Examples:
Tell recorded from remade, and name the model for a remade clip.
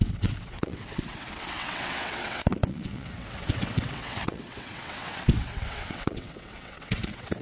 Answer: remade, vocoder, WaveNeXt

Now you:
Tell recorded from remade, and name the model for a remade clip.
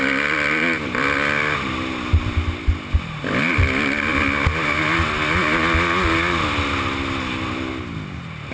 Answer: recorded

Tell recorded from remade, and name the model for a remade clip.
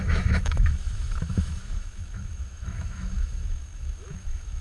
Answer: remade, autoencoder, DAC-VAE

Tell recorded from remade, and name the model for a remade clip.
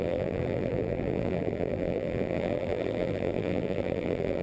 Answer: remade, vocoder, BigVGAN v2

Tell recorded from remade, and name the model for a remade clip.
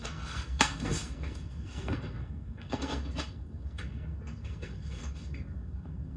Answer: remade, codec, SNAC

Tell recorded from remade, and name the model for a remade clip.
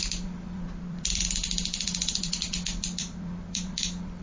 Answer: remade, vocoder, BigVGAN v2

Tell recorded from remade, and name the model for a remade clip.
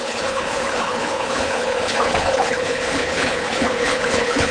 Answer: remade, codec, HILCodec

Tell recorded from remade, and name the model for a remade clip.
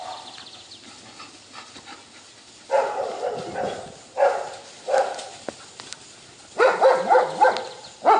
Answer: recorded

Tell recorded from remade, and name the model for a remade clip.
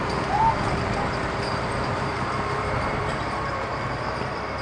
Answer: remade, vocoder, BigVGAN v2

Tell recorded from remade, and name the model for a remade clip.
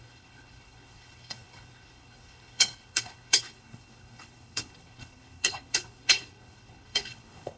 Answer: remade, codec, HILCodec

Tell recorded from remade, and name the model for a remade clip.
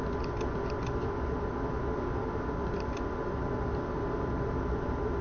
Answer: recorded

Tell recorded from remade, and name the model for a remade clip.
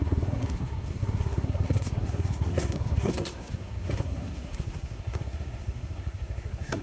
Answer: remade, codec, SNAC